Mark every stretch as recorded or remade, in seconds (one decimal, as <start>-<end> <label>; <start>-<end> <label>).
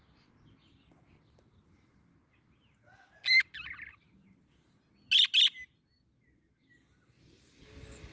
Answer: 0.0-8.1 recorded